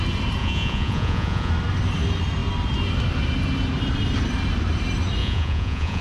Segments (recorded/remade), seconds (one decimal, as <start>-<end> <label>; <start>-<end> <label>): 0.0-0.4 recorded; 0.4-1.5 remade; 1.5-5.2 recorded; 5.2-6.0 remade